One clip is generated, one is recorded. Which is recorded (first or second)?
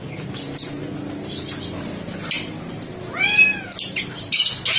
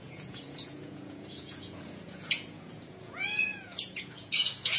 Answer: first